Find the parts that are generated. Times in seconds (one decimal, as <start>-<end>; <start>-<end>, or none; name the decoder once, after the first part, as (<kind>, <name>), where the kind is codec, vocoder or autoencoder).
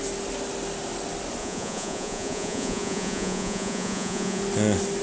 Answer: 1.4-4.4 (vocoder, Vocos)